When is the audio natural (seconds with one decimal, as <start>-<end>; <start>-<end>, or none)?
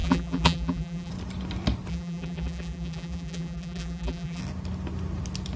1.1-1.9; 4.4-5.6